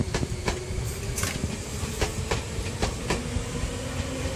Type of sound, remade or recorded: recorded